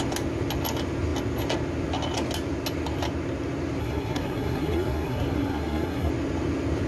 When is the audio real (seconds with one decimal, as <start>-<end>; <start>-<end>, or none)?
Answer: 0.0-3.8; 6.1-6.9